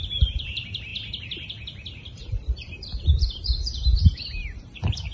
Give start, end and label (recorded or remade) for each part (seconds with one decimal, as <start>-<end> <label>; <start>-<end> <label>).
0.0-5.1 remade